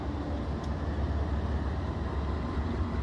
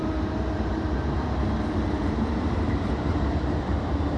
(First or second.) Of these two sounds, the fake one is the second